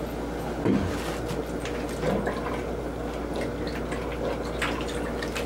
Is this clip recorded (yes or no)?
yes